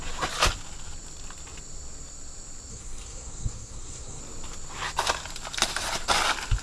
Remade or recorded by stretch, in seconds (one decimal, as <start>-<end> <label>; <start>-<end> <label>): 0.0-2.7 recorded; 2.7-4.2 remade; 4.2-6.6 recorded